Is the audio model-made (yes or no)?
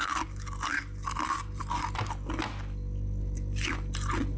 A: no